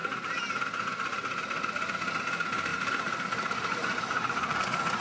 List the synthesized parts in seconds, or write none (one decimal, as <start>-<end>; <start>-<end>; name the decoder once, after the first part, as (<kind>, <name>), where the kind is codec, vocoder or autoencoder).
0.0-0.6 (vocoder, BigVGAN v2); 2.7-4.6